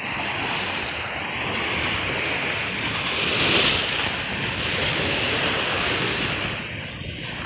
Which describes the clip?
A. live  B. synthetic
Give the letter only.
A